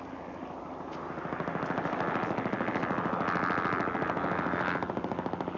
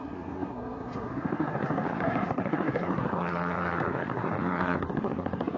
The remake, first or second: second